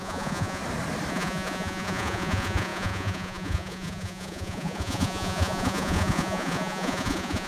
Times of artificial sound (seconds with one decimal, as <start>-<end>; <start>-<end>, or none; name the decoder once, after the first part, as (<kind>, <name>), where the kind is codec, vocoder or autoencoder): 0.0-0.6 (vocoder, Vocos); 1.1-7.5